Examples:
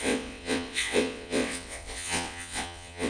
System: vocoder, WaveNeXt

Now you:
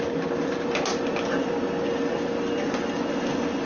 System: none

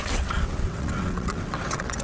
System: vocoder, WaveNeXt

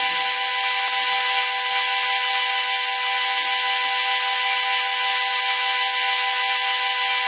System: none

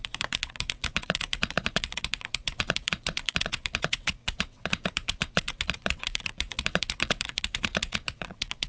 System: vocoder, WaveNeXt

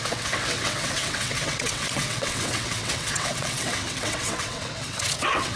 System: vocoder, WaveNeXt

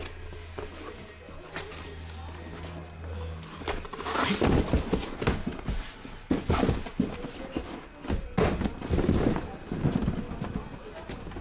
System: none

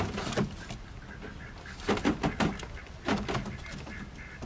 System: none